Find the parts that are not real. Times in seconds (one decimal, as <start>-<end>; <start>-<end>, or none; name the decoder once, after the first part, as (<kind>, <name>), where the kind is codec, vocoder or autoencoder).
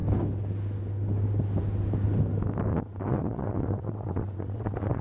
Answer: 2.7-5.0 (vocoder, WaveNeXt)